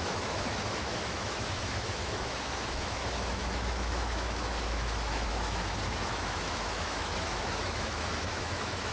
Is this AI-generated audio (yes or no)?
yes